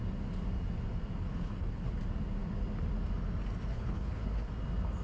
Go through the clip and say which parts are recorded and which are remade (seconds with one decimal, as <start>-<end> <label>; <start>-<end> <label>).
0.0-1.2 recorded; 1.2-2.0 remade; 2.0-3.7 recorded; 3.7-4.5 remade; 4.5-5.0 recorded

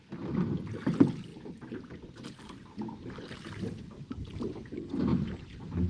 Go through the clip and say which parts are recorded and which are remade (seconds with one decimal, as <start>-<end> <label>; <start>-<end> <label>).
0.0-5.9 recorded

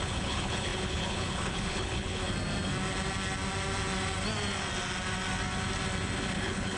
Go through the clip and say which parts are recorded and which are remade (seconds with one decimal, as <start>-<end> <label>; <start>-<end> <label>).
0.0-2.2 remade; 2.2-6.3 recorded; 6.3-6.8 remade

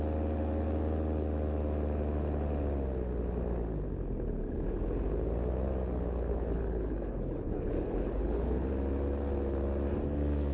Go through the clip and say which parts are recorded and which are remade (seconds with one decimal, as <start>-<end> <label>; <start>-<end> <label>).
0.0-6.3 recorded; 6.3-8.7 remade; 8.7-10.5 recorded

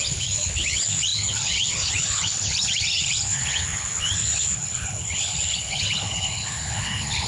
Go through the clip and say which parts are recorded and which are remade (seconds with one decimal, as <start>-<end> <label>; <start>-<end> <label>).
0.0-7.3 remade